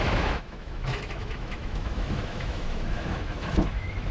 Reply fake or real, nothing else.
fake